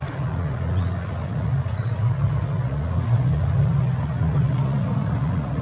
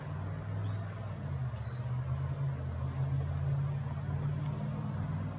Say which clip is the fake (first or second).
first